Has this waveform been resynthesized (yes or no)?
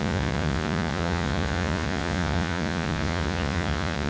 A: yes